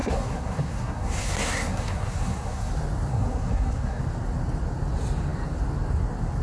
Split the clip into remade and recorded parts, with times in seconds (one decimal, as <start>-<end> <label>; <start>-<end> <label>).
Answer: 0.0-2.7 remade; 2.7-3.1 recorded; 3.1-4.0 remade; 4.0-6.4 recorded